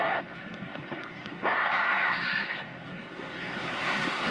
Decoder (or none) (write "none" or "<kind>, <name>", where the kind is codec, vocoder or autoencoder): codec, SNAC